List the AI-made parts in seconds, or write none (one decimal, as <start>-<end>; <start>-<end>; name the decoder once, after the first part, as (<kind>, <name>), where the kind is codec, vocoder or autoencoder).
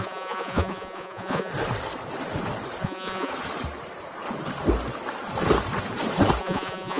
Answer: 0.0-1.5 (vocoder, Vocos); 2.8-3.3; 6.4-7.0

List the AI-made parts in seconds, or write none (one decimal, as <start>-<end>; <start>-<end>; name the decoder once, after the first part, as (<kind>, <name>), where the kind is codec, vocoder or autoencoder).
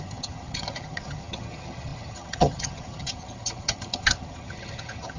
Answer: 0.0-5.2 (vocoder, HiFi-GAN)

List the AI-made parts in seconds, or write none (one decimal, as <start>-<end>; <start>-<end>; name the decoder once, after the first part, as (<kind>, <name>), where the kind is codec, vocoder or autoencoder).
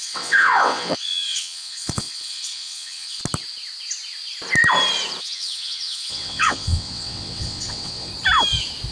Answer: 0.0-3.2 (vocoder, WaveNeXt); 5.2-8.1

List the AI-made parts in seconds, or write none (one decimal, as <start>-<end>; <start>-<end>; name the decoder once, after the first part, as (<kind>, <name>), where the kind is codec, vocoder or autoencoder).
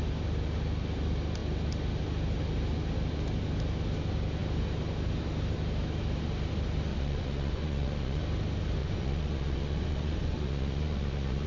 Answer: 6.9-8.2 (vocoder, Vocos); 8.8-11.5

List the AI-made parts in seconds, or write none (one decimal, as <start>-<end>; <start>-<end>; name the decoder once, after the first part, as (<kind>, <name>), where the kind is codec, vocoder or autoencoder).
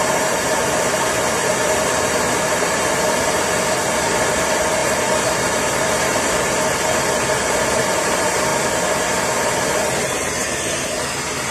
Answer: 0.0-8.5 (vocoder, BigVGAN v2); 10.0-11.5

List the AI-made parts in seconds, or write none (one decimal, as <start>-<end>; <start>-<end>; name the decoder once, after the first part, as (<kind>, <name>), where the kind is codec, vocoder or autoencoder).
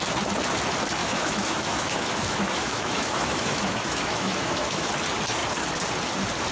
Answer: 1.0-4.9 (autoencoder, DAC-VAE)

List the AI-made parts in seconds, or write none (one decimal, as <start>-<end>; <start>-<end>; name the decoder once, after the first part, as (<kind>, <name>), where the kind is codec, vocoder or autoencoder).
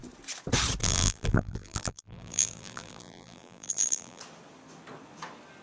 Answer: 0.8-4.2 (vocoder, BigVGAN v2)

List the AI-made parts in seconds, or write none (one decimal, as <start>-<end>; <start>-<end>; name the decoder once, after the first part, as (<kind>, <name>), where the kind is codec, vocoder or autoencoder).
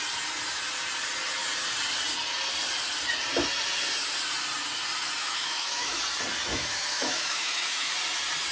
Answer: 5.2-6.0 (autoencoder, DAC-VAE); 6.5-7.9